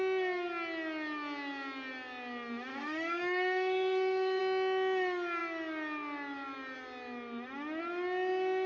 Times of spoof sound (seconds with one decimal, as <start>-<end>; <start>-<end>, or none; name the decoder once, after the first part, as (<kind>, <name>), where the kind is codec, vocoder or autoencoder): 2.7-4.4 (codec, SNAC)